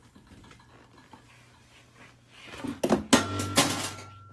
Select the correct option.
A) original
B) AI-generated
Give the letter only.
A